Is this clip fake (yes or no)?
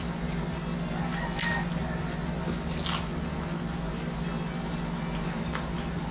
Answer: no